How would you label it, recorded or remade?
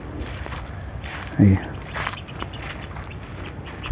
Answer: recorded